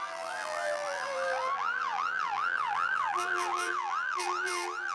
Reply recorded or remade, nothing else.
remade